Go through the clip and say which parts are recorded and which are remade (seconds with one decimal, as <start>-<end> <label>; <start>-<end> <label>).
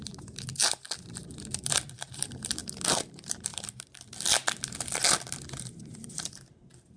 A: 0.0-0.6 remade; 0.6-1.6 recorded; 1.6-2.6 remade; 2.6-3.1 recorded; 3.1-3.5 remade; 3.5-5.5 recorded; 5.5-7.0 remade